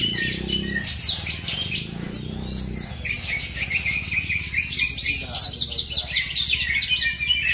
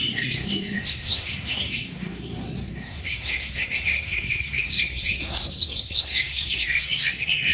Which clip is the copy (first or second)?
second